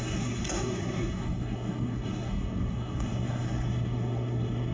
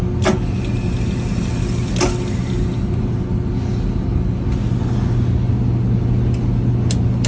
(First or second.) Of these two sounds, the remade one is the first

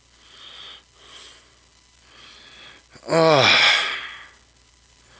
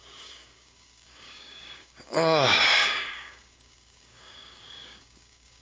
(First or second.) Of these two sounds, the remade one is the second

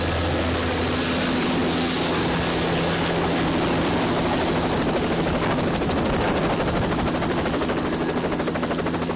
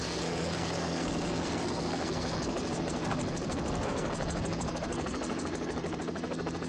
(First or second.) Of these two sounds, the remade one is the second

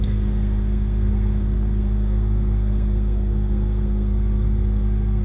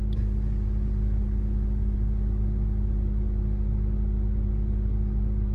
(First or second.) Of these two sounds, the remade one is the first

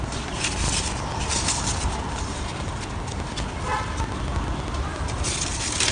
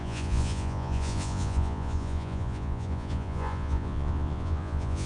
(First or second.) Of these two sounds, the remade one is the second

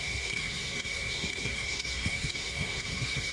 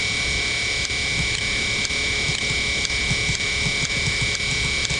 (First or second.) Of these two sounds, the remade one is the first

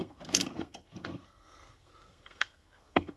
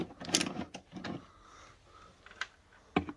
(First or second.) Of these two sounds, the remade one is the first